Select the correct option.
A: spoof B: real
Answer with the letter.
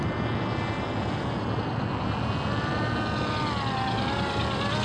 B